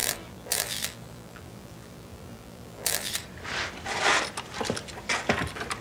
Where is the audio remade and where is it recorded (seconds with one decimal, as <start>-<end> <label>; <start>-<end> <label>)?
0.0-3.1 remade; 3.1-5.8 recorded